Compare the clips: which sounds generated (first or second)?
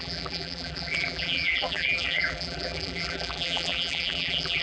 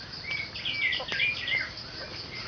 first